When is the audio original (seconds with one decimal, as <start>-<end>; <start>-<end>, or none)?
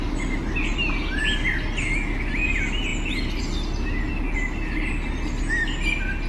0.0-6.3